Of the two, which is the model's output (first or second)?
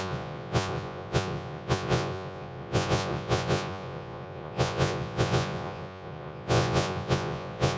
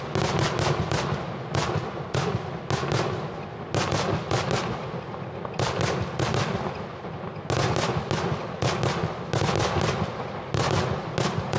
first